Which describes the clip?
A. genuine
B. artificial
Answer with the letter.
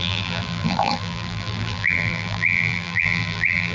B